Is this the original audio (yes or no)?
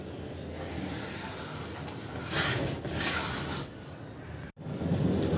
yes